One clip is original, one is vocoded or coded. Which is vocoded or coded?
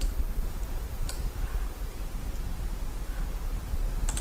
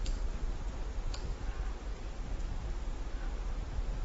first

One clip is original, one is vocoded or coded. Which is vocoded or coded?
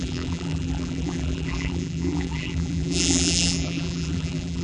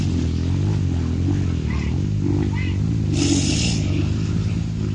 first